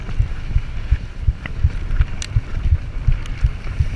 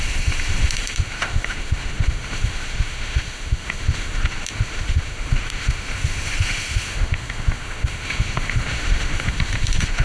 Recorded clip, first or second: first